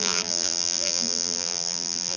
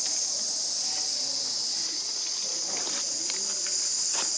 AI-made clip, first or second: first